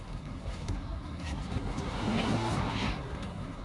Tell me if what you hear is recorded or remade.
remade